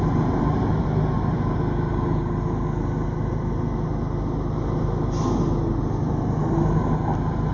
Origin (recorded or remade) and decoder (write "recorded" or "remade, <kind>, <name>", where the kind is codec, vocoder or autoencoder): recorded